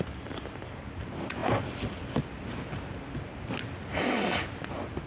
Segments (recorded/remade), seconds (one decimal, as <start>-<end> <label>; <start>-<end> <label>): 0.0-5.1 recorded